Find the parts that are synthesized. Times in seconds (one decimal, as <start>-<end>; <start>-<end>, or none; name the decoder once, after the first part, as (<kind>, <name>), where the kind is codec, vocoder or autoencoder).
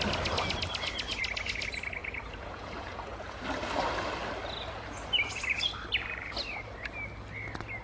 2.0-3.4 (vocoder, Vocos)